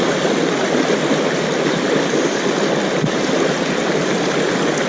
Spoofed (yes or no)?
no